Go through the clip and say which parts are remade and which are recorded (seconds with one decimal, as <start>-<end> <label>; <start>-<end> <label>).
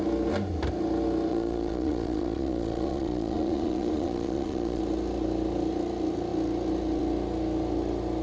0.0-1.3 recorded; 1.3-4.8 remade; 4.8-8.2 recorded